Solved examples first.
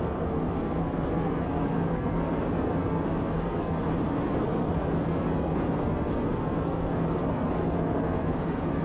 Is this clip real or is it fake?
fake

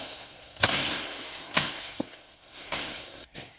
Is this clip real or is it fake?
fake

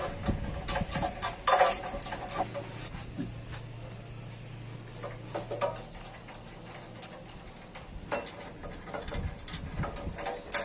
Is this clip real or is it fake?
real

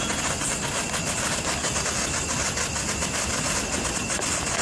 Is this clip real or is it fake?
real